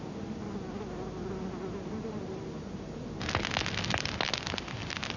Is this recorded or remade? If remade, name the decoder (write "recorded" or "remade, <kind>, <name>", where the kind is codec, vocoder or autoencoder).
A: recorded